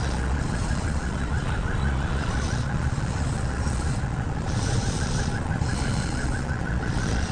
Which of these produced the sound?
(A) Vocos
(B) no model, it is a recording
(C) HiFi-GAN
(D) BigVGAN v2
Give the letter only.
A